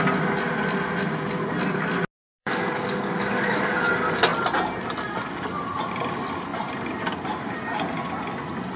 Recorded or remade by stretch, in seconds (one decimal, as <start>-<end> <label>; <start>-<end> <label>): 0.0-2.4 recorded; 2.4-3.7 remade; 3.7-8.8 recorded